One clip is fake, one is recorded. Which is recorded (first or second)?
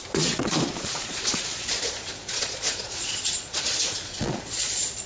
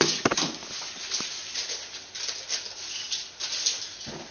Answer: second